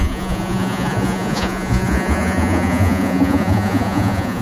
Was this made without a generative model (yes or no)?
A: no